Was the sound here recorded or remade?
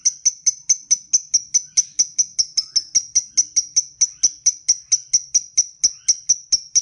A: recorded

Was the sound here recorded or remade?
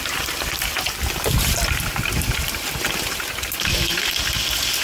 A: recorded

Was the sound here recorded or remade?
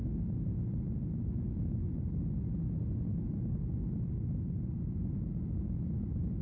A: recorded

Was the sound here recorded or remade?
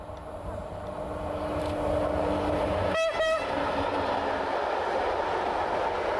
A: recorded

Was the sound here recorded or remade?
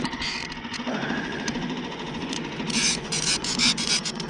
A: remade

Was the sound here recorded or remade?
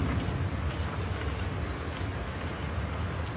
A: recorded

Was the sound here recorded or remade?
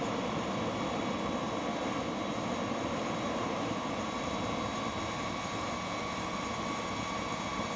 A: recorded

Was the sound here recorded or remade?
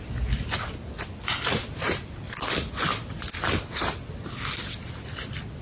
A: recorded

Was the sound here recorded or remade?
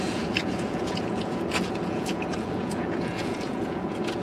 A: remade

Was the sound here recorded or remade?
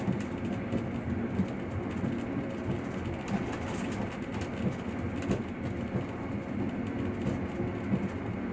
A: recorded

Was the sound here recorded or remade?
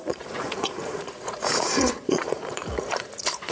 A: remade